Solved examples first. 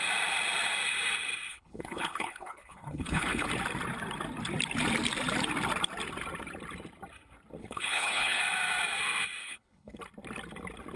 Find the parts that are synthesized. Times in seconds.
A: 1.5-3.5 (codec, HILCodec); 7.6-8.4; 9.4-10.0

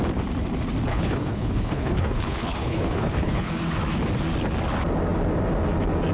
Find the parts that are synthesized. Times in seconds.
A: 0.9-3.5 (codec, HILCodec)

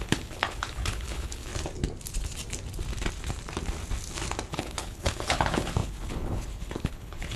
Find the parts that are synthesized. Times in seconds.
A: 0.0-1.5 (codec, HILCodec); 4.5-7.4

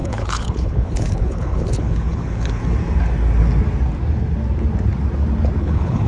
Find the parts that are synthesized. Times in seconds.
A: 0.0-2.6 (codec, HILCodec); 5.6-6.1

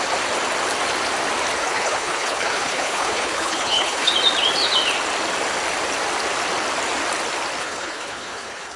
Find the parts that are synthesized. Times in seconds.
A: 1.6-4.1 (codec, HILCodec); 7.6-8.8

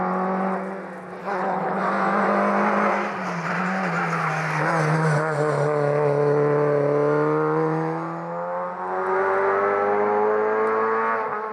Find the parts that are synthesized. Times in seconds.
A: 1.2-1.8 (codec, HILCodec)

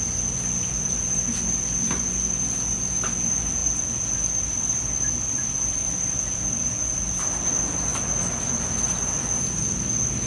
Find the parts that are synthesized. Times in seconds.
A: none

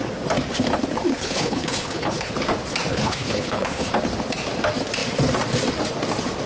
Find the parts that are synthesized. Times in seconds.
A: 1.1-2.3 (codec, HILCodec); 2.9-3.9